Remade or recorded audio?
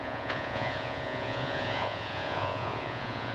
remade